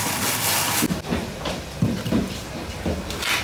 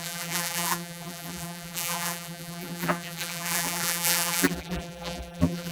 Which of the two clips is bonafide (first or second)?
first